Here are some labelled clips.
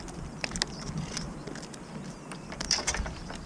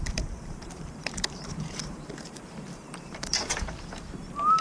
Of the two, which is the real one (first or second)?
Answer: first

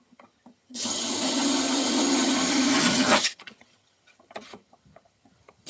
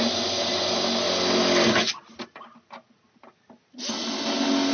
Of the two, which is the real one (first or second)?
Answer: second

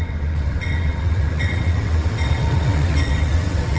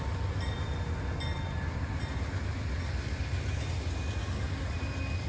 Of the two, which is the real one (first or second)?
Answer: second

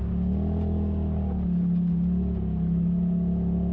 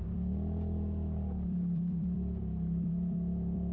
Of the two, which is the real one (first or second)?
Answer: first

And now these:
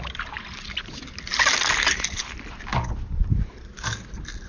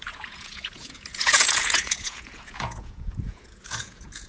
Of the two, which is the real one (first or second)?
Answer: first